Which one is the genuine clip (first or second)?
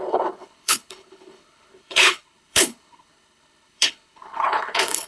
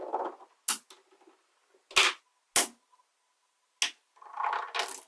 second